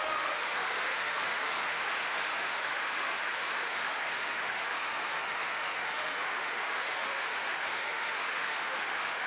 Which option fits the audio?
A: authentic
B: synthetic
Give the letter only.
B